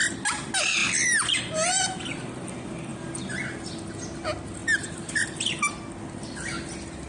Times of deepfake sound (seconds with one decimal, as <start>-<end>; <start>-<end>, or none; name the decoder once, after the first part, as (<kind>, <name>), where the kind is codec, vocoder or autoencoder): 4.6-5.4 (vocoder, BigVGAN v2)